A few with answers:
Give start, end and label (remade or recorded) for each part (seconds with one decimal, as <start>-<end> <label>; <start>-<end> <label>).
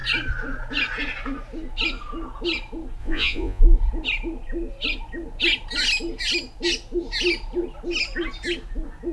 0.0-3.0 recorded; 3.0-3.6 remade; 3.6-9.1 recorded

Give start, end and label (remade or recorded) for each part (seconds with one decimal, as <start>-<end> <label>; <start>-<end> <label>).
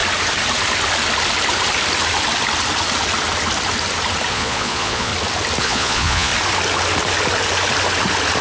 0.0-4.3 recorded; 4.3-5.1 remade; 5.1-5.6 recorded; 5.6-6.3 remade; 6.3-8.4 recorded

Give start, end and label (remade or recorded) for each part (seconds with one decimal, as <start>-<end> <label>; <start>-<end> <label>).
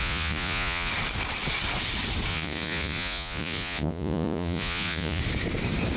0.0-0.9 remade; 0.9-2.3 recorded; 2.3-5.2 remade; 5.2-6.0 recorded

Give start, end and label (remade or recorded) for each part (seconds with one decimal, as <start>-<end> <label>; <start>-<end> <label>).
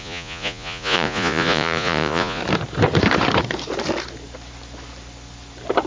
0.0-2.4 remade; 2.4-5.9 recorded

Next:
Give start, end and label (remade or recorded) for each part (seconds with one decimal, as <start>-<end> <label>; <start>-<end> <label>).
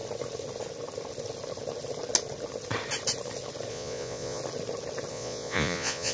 0.0-3.7 recorded; 3.7-4.4 remade; 4.4-5.1 recorded; 5.1-6.1 remade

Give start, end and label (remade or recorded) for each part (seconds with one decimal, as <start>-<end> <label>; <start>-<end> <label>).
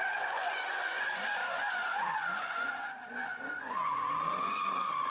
0.0-5.1 remade